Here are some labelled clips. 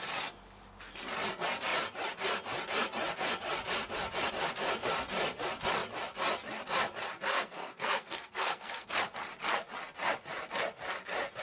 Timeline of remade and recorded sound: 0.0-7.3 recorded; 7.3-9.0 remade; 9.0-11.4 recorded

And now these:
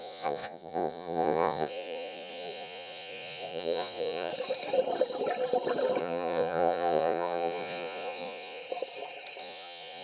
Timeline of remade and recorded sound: 0.0-4.3 remade; 4.3-6.0 recorded; 6.0-8.6 remade; 8.6-9.4 recorded; 9.4-10.0 remade

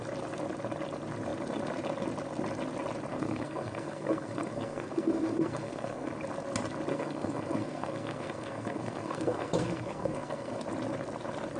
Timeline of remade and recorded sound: 0.0-3.1 recorded; 3.1-6.1 remade; 6.1-6.9 recorded; 6.9-10.6 remade; 10.6-11.6 recorded

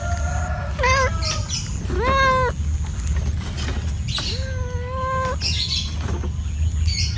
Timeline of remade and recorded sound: 0.0-7.2 recorded

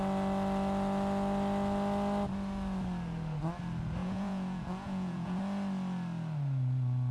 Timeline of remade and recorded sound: 0.0-4.0 recorded; 4.0-5.4 remade; 5.4-7.1 recorded

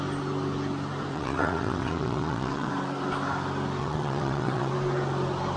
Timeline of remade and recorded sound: 0.0-1.1 recorded; 1.1-2.7 remade; 2.7-3.8 recorded; 3.8-4.7 remade; 4.7-5.6 recorded

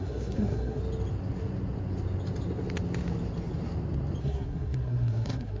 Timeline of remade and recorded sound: 0.0-0.8 remade; 0.8-4.2 recorded; 4.2-5.6 remade

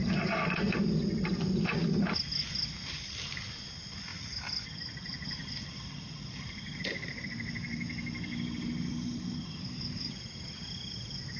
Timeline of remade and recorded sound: 0.0-11.4 recorded